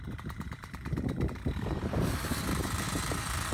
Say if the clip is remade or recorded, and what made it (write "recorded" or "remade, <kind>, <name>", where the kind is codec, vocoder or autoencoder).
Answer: remade, vocoder, BigVGAN v2